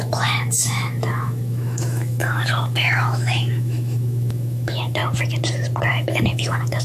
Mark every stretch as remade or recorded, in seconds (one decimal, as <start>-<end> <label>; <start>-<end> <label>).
0.0-5.0 remade; 5.0-5.9 recorded; 5.9-6.8 remade